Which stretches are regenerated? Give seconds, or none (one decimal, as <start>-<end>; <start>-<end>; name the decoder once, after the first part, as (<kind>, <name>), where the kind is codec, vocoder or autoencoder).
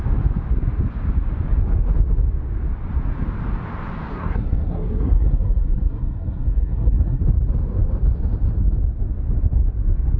4.1-7.2 (codec, SNAC)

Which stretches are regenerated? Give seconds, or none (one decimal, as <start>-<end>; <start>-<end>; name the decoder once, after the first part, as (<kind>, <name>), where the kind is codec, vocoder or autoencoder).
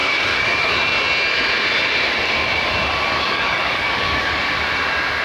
0.0-0.7 (codec, DAC); 3.1-4.4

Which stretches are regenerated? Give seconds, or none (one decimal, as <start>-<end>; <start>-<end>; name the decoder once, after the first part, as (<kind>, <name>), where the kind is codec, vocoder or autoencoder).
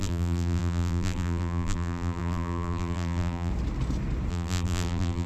0.0-3.5 (vocoder, BigVGAN v2); 4.3-5.3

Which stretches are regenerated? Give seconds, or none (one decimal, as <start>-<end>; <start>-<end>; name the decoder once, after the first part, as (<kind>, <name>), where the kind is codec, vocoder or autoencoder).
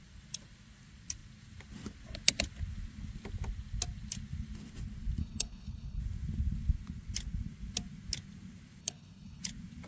5.2-6.0 (codec, HILCodec); 8.8-9.4